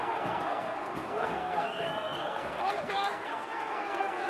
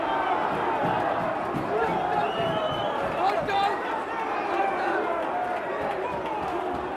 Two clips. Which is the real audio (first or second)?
second